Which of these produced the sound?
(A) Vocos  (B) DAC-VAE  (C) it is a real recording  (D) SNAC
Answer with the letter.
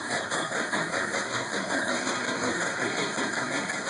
D